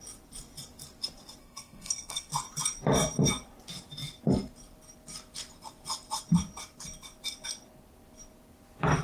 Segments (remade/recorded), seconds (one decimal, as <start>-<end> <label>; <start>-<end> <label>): 0.0-1.4 recorded; 1.4-2.3 remade; 2.3-9.0 recorded